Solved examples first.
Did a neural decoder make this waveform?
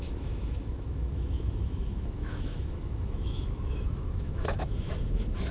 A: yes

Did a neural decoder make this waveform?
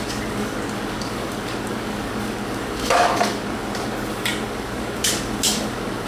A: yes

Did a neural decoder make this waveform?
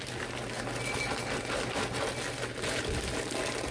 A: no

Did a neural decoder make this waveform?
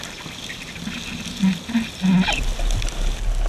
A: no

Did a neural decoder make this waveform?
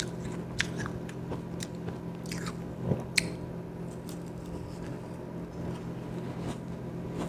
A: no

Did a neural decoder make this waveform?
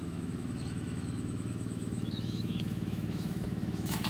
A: yes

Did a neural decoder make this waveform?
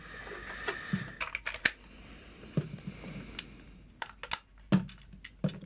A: no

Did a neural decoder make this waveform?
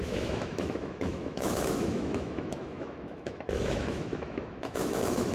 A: yes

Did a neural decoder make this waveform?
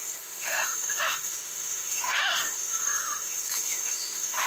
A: yes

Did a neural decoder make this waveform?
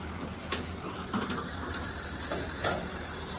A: no